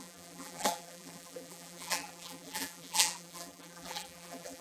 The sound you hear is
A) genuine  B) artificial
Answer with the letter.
B